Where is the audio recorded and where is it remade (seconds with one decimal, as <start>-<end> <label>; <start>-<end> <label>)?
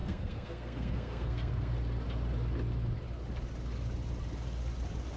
0.0-1.7 remade; 1.7-5.2 recorded